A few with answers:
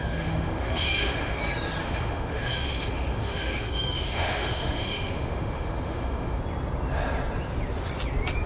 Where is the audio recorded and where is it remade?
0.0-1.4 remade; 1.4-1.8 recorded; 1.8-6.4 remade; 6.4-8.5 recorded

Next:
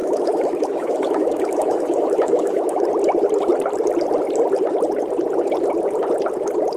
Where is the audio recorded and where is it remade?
0.0-2.8 remade; 2.8-6.8 recorded

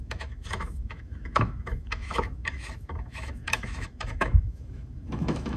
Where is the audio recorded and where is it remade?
0.0-5.6 remade

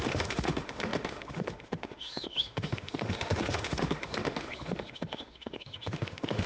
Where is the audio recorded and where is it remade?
0.0-6.5 remade

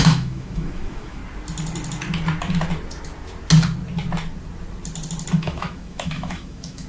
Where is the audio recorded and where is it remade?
0.0-1.2 remade; 1.2-5.3 recorded; 5.3-6.9 remade